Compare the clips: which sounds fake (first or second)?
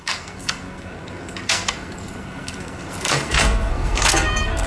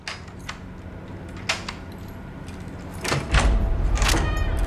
first